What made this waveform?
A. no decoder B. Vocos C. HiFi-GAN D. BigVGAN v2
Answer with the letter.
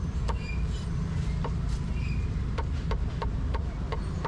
D